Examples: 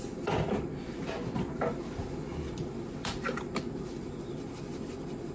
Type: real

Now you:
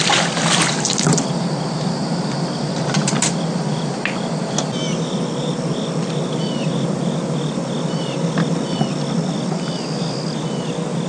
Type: real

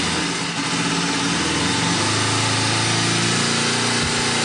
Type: real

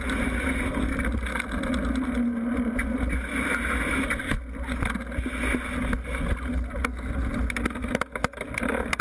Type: real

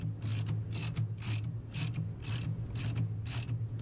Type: real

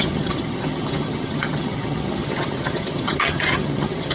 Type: fake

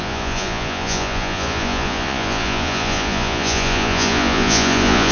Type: fake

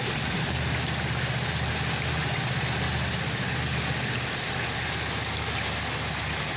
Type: real